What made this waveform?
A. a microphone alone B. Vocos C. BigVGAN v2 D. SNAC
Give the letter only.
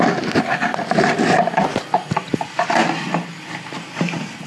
A